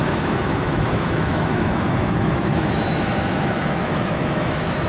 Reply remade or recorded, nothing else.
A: remade